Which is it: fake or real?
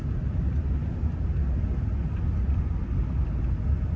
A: real